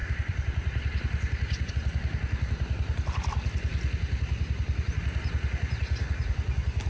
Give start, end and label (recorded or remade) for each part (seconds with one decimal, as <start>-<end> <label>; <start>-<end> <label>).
0.0-1.7 remade; 1.7-6.9 recorded